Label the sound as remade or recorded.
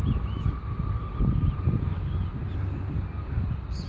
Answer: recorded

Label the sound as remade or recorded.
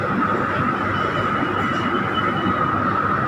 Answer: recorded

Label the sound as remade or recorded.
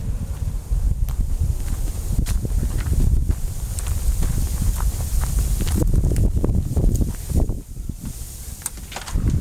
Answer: remade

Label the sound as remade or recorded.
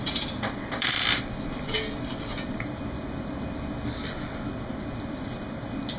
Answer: remade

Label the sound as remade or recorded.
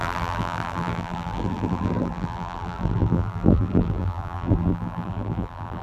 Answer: remade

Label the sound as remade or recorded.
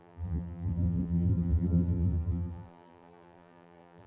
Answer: remade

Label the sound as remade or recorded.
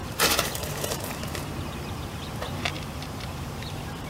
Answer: remade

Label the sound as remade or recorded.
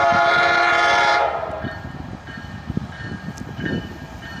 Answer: recorded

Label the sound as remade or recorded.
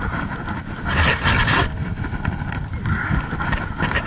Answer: recorded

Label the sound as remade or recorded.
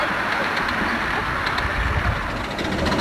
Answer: recorded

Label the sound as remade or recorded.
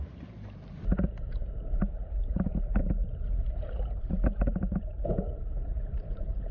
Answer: remade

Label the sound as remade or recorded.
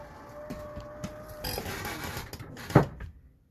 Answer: recorded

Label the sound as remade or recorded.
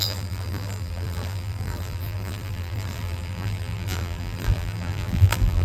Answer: remade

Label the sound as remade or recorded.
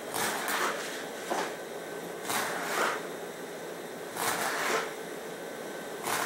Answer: recorded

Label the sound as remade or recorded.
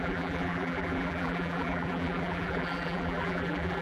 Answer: remade